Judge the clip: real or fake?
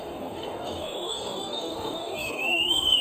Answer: fake